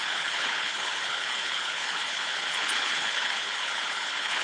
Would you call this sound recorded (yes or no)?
no